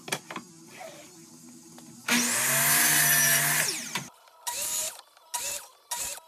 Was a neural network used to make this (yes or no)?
no